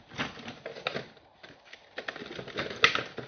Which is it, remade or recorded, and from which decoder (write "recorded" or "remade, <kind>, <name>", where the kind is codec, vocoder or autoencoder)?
recorded